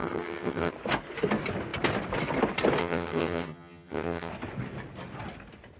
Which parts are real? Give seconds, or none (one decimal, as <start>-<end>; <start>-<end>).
0.7-2.8; 4.3-5.8